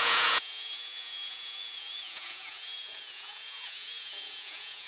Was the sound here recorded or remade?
remade